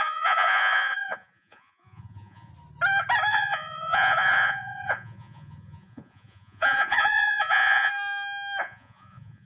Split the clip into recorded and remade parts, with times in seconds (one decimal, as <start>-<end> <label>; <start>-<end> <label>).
0.0-2.5 remade; 2.5-3.3 recorded; 3.3-7.9 remade; 7.9-8.6 recorded; 8.6-9.5 remade